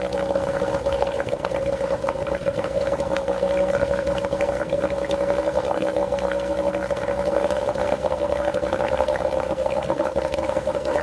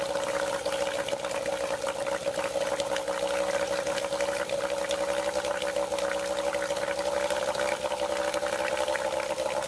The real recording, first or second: second